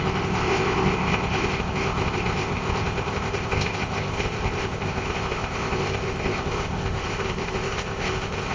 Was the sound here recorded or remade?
remade